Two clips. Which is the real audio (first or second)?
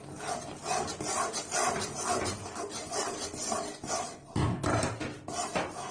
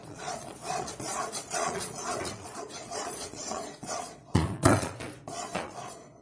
first